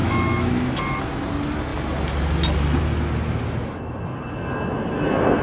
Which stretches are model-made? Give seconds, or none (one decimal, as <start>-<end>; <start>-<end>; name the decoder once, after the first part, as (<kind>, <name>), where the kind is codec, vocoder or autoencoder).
0.0-0.8 (autoencoder, DAC-VAE)

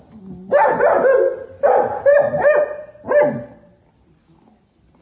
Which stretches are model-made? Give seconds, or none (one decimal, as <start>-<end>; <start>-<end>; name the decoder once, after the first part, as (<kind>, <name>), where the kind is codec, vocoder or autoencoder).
none

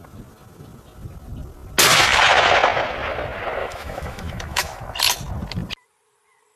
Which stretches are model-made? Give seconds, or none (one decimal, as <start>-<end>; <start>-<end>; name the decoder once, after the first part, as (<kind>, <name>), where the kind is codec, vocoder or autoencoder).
3.6-4.8 (autoencoder, DAC-VAE)

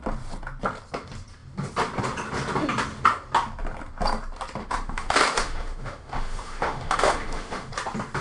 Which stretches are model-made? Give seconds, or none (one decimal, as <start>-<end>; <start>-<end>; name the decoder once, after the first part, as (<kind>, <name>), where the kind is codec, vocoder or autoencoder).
4.6-7.7 (autoencoder, DAC-VAE)

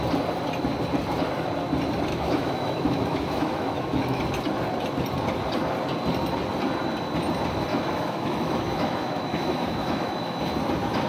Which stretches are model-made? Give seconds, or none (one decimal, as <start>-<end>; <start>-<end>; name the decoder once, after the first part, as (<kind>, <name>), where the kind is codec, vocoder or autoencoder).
2.1-4.2 (autoencoder, DAC-VAE); 7.7-10.4

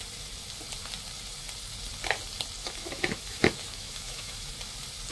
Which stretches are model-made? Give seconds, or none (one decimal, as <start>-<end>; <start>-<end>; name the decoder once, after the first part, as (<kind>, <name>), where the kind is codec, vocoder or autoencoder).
2.6-4.5 (autoencoder, DAC-VAE)

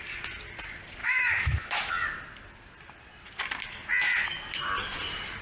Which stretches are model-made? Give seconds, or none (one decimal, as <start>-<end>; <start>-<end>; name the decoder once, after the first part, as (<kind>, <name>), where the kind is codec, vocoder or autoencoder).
1.0-1.9 (autoencoder, DAC-VAE)